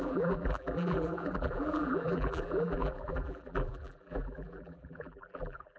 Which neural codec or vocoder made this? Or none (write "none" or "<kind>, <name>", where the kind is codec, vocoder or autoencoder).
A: vocoder, BigVGAN v2